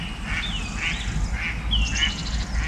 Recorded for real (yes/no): yes